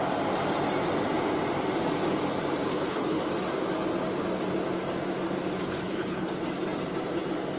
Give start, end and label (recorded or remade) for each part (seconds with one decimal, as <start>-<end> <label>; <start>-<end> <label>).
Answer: 0.0-2.7 recorded; 2.7-3.2 remade; 3.2-5.6 recorded; 5.6-6.3 remade; 6.3-7.6 recorded